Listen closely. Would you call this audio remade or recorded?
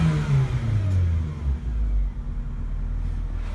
recorded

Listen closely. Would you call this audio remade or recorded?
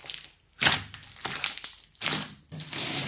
recorded